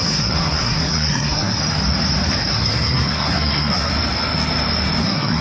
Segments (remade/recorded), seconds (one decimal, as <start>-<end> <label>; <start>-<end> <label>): 0.0-1.6 remade; 1.6-2.5 recorded; 2.5-3.9 remade; 3.9-5.0 recorded; 5.0-5.4 remade